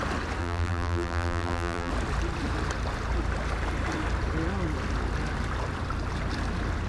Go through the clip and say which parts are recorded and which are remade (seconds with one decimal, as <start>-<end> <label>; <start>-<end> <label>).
0.0-0.4 recorded; 0.4-1.9 remade; 1.9-6.9 recorded